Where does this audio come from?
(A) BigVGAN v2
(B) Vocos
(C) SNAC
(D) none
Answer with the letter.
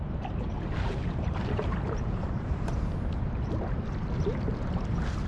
A